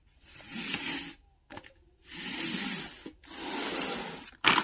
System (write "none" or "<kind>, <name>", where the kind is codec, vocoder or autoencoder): none